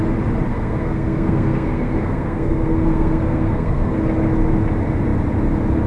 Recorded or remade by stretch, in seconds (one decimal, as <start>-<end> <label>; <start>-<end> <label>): 0.0-0.5 recorded; 0.5-4.0 remade; 4.0-5.9 recorded